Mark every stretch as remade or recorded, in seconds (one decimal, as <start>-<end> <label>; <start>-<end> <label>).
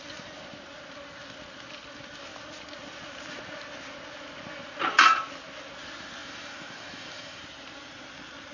0.0-6.2 recorded; 6.2-7.4 remade; 7.4-8.5 recorded